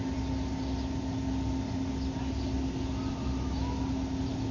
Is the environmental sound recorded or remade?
recorded